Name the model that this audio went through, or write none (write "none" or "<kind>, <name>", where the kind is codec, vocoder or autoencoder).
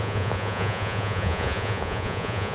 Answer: vocoder, Vocos